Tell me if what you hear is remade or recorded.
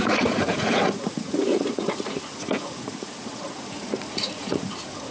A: remade